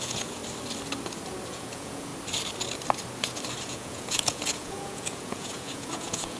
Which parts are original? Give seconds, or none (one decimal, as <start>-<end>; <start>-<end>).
0.4-1.5; 2.1-3.7